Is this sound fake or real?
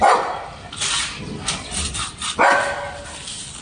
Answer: real